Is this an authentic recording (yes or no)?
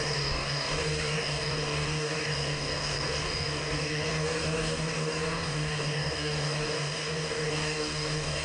no